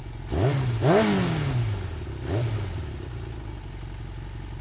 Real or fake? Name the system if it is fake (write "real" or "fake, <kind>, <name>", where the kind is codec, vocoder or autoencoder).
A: real